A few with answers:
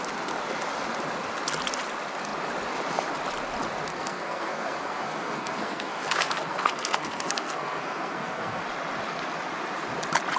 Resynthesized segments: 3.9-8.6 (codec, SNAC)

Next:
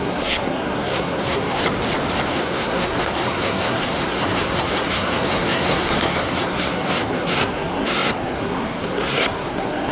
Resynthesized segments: 0.0-1.6 (codec, SNAC); 2.3-9.9

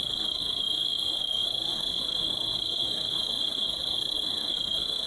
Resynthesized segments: 0.0-5.1 (codec, SNAC)